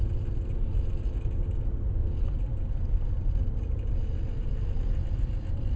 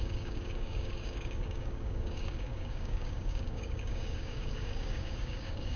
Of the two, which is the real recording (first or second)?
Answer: first